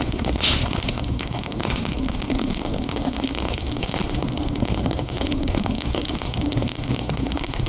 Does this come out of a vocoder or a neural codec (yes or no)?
yes